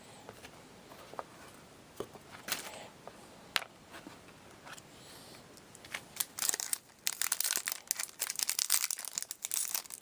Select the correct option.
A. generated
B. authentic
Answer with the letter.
B